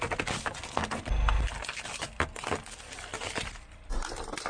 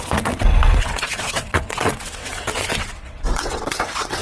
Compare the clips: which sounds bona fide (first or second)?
first